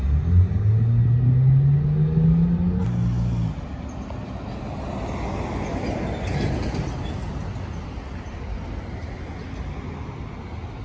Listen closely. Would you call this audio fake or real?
real